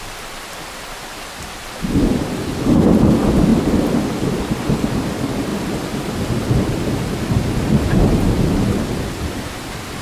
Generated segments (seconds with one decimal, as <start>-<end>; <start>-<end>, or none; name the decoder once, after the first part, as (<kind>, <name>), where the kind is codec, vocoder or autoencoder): none